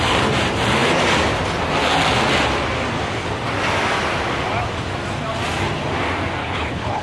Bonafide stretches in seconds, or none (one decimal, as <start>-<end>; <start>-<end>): 0.0-6.4